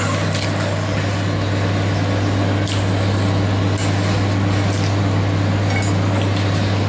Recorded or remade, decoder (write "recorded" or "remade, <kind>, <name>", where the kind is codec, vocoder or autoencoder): recorded